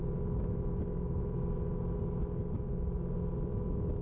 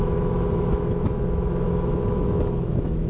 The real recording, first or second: first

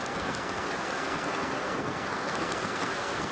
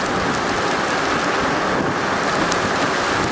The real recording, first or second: second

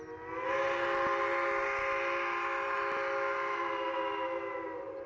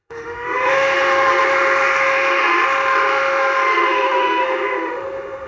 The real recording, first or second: first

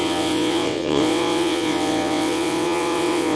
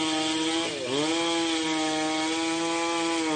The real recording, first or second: second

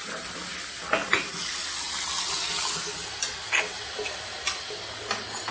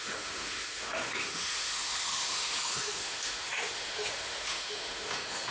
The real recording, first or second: first